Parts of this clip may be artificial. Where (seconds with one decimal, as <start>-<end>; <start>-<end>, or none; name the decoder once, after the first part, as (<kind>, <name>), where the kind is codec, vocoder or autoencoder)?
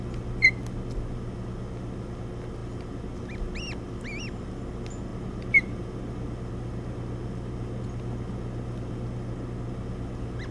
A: none